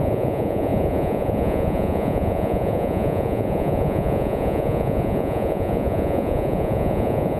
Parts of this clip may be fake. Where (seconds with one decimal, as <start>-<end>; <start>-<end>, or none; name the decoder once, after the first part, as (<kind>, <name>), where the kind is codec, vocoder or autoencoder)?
0.0-7.4 (vocoder, Vocos)